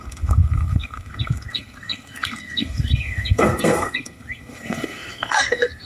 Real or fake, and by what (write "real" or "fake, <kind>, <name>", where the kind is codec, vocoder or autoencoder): fake, codec, SNAC